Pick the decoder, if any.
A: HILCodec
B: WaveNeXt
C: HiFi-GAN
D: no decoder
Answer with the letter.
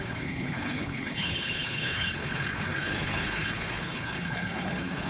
A